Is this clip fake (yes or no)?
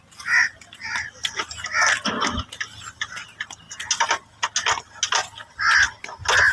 no